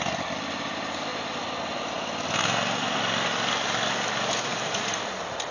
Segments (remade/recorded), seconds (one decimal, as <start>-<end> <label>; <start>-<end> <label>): 0.0-5.5 recorded